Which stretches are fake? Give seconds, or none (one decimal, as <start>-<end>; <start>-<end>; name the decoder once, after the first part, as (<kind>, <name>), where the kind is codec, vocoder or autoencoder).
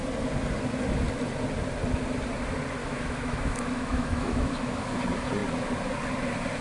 2.8-5.0 (autoencoder, DAC-VAE)